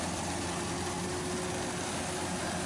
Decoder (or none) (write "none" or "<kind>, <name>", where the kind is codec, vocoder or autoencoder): none